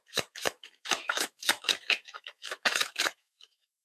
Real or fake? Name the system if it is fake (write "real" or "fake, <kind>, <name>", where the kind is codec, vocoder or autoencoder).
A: fake, autoencoder, DAC-VAE